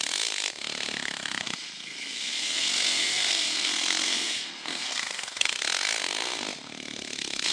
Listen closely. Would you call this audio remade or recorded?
remade